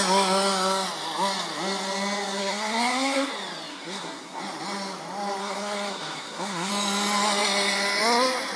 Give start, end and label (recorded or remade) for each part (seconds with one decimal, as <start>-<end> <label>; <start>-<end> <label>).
0.0-2.4 recorded; 2.4-3.3 remade; 3.3-3.7 recorded; 3.7-4.4 remade; 4.4-5.4 recorded; 5.4-6.7 remade; 6.7-8.6 recorded